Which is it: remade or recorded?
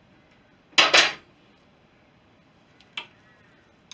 recorded